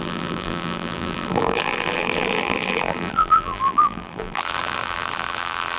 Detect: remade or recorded remade